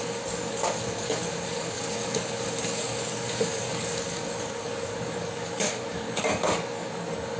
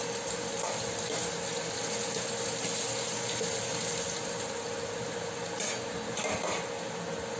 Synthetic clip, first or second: first